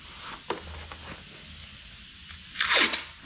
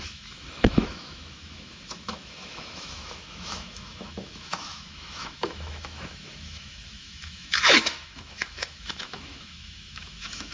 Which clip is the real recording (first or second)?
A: first